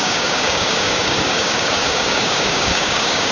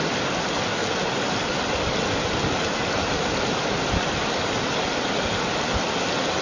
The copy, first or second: first